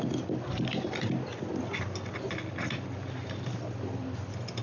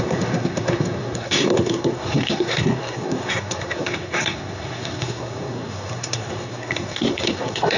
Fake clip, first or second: second